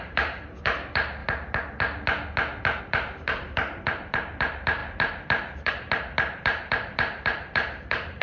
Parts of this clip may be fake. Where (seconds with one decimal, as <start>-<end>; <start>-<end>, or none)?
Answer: 0.0-1.2; 2.8-8.2